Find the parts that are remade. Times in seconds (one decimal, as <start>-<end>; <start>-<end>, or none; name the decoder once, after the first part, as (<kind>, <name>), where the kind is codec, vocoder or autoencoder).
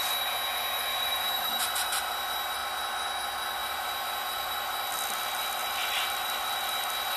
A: 0.9-1.6 (autoencoder, DAC-VAE)